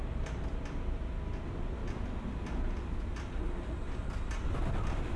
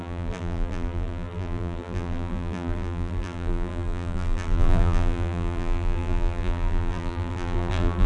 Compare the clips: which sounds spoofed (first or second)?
second